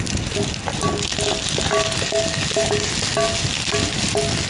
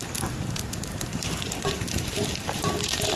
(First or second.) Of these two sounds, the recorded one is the first